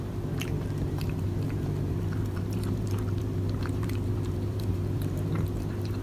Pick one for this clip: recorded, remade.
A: remade